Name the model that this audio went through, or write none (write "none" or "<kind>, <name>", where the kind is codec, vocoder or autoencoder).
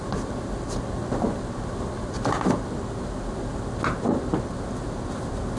none